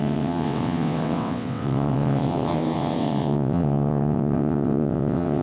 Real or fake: fake